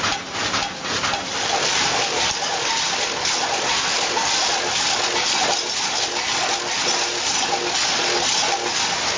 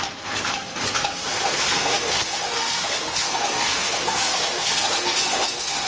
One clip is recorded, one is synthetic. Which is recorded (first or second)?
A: first